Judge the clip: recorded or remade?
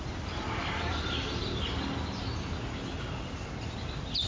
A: recorded